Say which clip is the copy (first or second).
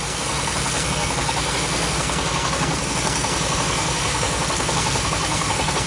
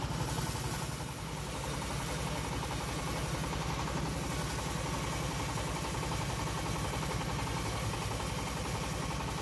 first